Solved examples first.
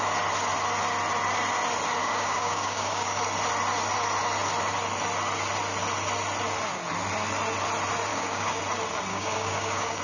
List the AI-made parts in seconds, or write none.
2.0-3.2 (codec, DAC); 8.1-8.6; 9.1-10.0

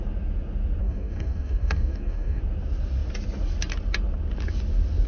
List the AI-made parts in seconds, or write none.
0.8-2.4 (codec, DAC)